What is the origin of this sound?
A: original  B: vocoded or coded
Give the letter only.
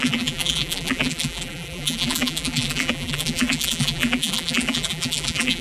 B